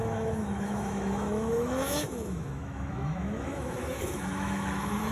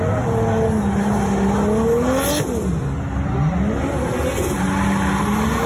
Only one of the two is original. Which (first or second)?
second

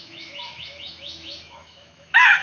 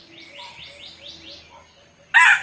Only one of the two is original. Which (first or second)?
second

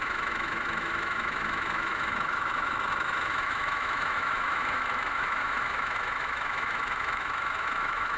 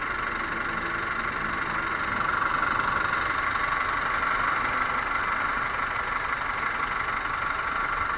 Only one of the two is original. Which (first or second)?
second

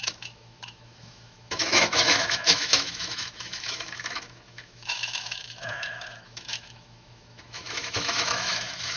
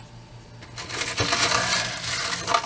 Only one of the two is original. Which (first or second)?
second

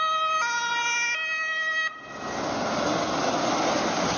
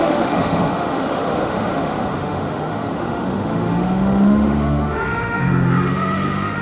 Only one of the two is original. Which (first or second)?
first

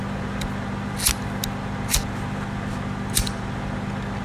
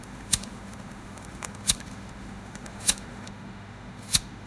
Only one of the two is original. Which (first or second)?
first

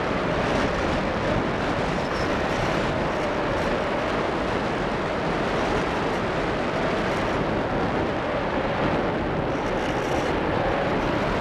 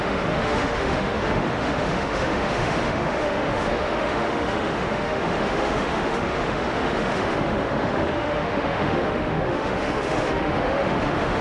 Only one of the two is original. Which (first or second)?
first